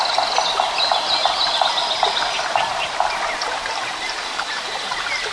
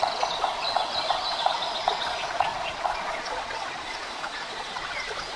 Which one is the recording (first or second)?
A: first